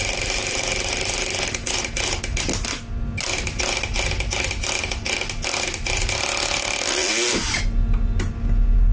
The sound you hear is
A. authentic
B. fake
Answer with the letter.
A